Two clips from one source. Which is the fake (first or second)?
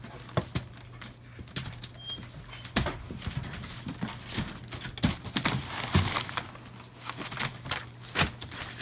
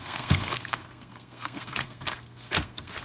second